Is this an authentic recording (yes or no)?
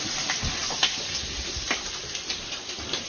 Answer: yes